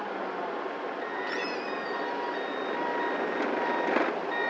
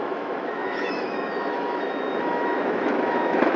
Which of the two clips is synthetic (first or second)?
second